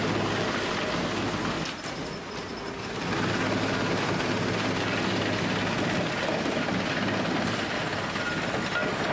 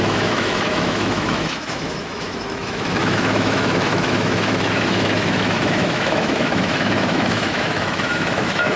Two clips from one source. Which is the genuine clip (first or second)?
first